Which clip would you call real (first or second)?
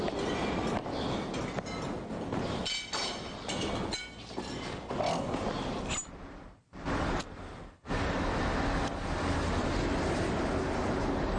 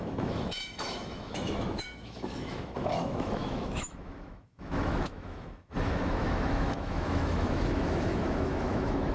first